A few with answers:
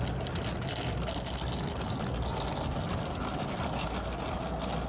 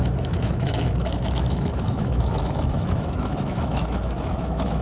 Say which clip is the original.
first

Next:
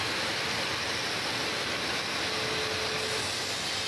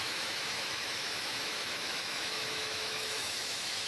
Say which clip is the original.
first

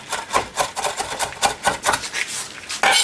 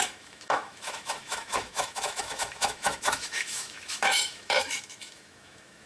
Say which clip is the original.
first